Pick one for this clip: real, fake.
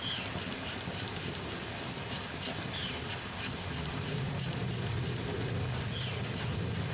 real